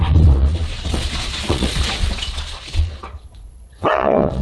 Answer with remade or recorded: remade